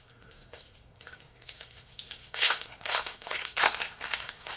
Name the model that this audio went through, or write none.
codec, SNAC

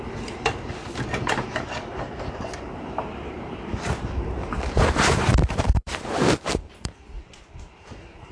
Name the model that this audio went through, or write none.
vocoder, BigVGAN v2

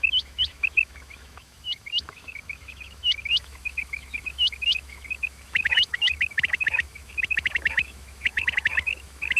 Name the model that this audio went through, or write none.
autoencoder, DAC-VAE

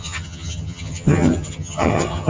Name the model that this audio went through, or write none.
vocoder, HiFi-GAN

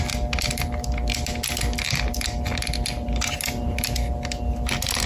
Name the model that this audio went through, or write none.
none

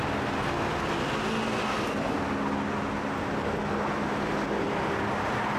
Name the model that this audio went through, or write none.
none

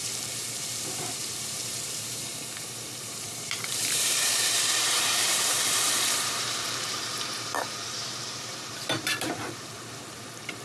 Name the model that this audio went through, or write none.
vocoder, BigVGAN v2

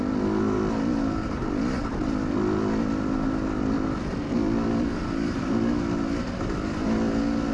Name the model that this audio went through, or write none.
none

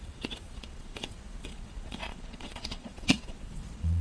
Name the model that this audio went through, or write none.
vocoder, Vocos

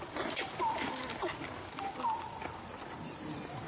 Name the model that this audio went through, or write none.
none